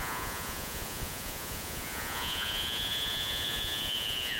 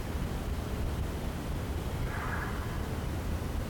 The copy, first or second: first